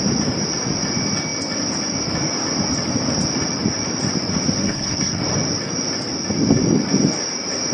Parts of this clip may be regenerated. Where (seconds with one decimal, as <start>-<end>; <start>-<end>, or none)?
4.6-5.2